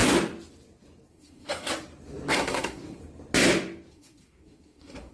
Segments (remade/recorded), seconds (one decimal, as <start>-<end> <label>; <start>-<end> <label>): 0.0-1.1 recorded; 1.1-1.7 remade; 1.7-2.3 recorded; 2.3-3.0 remade; 3.0-3.9 recorded; 3.9-5.1 remade